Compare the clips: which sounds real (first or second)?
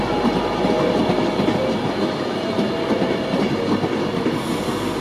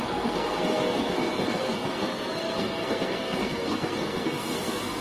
first